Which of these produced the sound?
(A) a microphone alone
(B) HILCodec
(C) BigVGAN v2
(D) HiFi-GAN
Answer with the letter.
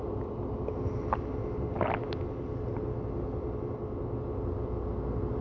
A